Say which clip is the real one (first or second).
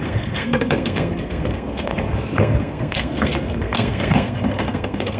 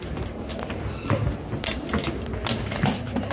second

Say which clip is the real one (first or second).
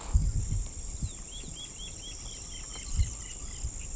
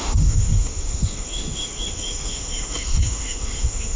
first